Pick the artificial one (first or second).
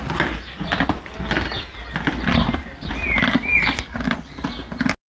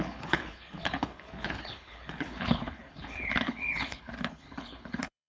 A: second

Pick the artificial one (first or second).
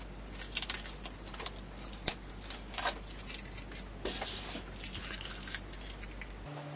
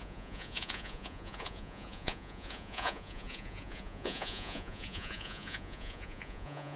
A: second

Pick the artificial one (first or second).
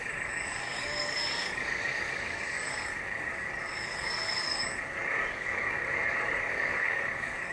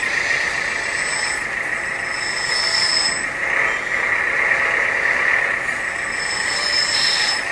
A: first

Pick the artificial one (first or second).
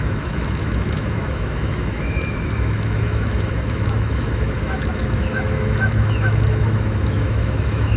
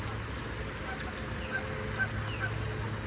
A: first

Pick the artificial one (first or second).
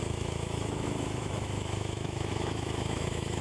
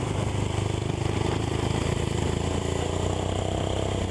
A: first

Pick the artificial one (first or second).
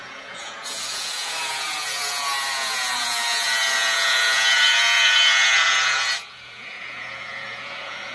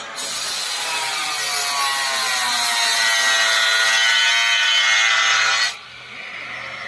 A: first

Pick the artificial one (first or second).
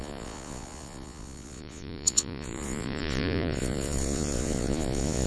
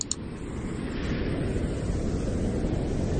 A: first